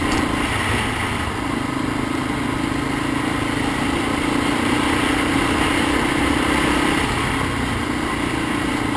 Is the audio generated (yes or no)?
no